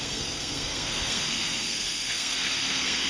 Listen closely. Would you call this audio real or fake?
fake